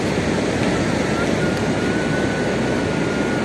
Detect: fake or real real